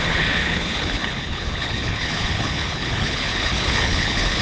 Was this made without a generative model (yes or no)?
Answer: no